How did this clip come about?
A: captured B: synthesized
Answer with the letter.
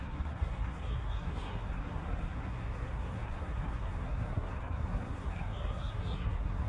B